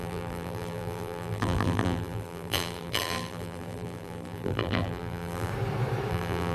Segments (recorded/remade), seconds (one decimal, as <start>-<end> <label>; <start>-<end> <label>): 0.0-5.5 remade; 5.5-6.1 recorded; 6.1-6.5 remade